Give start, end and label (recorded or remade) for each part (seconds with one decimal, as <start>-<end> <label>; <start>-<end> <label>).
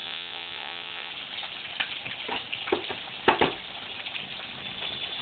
0.0-1.1 remade; 1.1-5.2 recorded